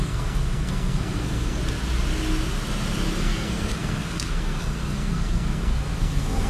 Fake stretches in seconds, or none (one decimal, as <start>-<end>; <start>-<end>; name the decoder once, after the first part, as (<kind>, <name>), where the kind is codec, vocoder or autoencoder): 0.0-1.6 (codec, SNAC); 3.2-6.5